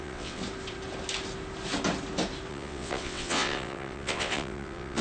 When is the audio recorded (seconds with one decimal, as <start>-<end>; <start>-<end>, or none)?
0.4-2.5